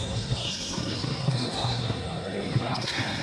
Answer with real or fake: fake